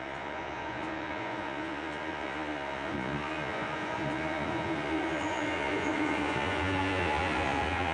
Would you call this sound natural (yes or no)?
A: no